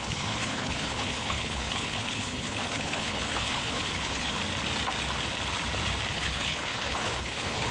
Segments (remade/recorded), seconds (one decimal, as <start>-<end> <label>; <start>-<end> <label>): 0.0-4.4 remade; 4.4-6.1 recorded; 6.1-7.7 remade